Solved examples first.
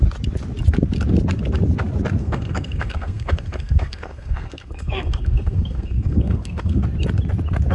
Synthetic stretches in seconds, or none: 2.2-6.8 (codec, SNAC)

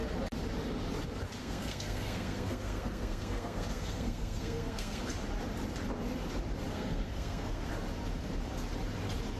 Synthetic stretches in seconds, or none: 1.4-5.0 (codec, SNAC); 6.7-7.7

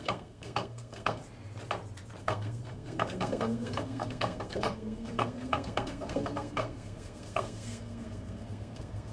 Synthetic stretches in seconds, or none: 0.0-1.2 (codec, SNAC); 2.2-9.1

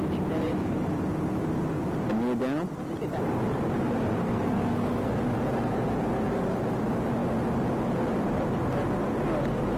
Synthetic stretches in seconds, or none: 4.2-5.1 (codec, SNAC)

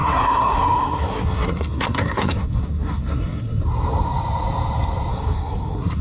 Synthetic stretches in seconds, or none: 0.0-3.6 (codec, SNAC); 5.1-6.0

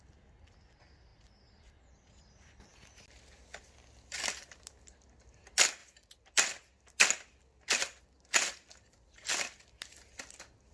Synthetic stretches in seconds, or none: none

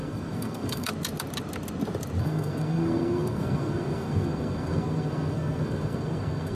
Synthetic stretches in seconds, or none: 0.0-0.9 (codec, SNAC); 2.2-6.5